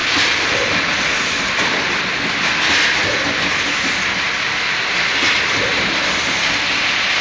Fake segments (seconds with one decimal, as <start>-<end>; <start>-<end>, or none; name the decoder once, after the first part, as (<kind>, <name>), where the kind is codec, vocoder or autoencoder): none